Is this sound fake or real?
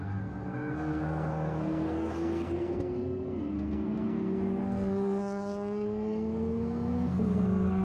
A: fake